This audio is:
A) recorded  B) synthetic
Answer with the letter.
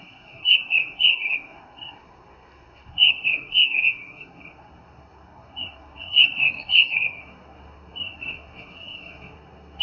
B